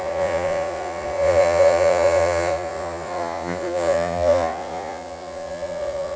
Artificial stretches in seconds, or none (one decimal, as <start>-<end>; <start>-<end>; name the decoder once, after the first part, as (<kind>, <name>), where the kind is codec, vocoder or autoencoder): 0.0-6.2 (vocoder, Vocos)

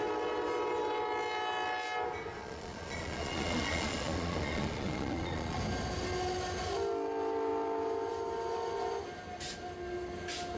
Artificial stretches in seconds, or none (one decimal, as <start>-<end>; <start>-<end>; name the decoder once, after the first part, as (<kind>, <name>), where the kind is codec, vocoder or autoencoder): 2.4-5.6 (vocoder, Vocos)

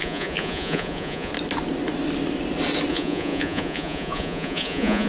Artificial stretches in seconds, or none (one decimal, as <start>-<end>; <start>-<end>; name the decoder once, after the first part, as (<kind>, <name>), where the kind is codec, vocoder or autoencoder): 0.0-1.3 (vocoder, Vocos); 2.9-5.1

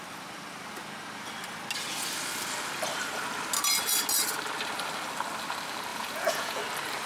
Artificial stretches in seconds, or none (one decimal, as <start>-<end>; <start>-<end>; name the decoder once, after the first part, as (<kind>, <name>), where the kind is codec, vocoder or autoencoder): 5.9-6.6 (vocoder, Vocos)

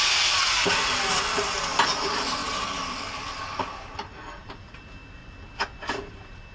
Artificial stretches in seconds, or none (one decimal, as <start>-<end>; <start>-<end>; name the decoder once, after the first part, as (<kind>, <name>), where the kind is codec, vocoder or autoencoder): none

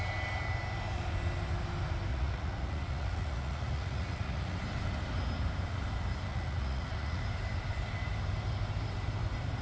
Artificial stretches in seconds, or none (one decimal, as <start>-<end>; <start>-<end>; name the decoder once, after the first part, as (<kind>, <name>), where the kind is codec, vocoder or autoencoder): 2.1-4.6 (vocoder, Vocos); 6.3-7.2

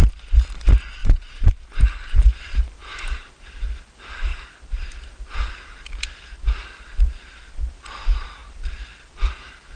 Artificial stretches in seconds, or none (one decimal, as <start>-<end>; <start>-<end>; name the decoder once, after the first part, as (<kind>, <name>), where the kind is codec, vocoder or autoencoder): 1.0-1.5 (vocoder, Vocos)